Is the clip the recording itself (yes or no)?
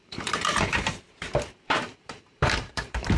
no